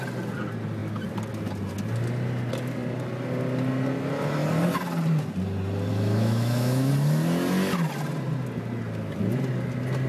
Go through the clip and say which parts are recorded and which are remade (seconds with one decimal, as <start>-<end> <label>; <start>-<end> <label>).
0.0-5.9 recorded; 5.9-6.9 remade; 6.9-10.1 recorded